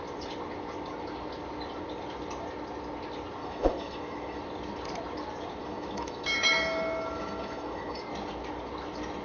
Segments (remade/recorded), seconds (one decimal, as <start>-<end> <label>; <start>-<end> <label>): 0.0-3.4 recorded; 3.4-4.4 remade; 4.4-5.6 recorded; 5.6-8.0 remade; 8.0-9.2 recorded